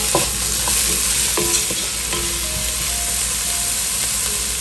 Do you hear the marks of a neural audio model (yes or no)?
no